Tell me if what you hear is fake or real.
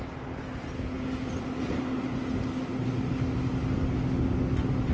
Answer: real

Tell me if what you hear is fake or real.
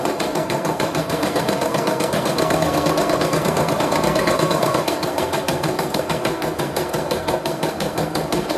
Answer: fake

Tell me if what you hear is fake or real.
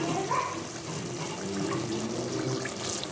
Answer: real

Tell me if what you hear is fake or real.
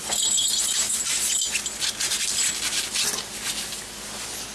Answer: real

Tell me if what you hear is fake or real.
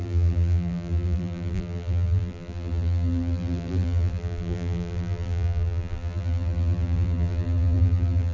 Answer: fake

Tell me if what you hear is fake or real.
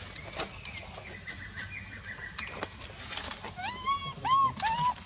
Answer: real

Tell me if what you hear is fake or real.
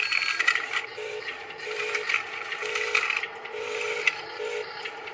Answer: real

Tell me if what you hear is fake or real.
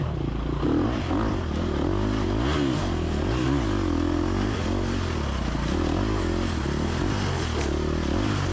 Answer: real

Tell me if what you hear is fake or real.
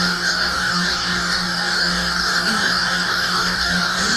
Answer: fake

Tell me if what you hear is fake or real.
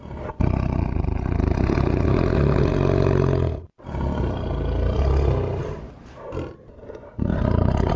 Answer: real